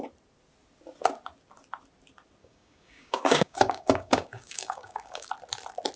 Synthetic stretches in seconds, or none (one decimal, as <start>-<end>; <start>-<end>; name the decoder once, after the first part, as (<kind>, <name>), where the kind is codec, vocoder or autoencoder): 2.4-5.3 (codec, DAC)